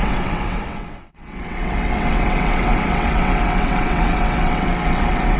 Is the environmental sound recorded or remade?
remade